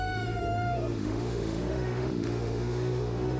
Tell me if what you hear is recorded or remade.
remade